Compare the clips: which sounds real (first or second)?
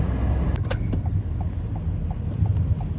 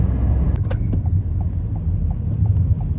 second